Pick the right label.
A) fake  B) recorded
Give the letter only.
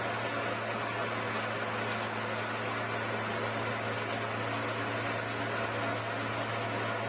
B